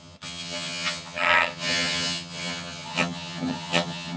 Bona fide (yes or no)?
no